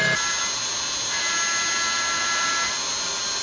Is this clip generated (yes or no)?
no